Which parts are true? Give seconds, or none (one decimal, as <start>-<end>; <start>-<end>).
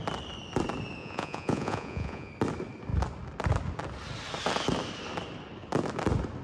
0.0-1.0; 2.3-6.4